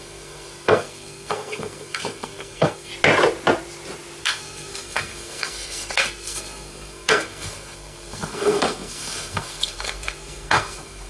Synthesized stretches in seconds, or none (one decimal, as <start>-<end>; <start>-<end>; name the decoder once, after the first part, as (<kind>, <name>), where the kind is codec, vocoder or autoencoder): 0.0-2.9 (codec, SNAC); 4.2-11.1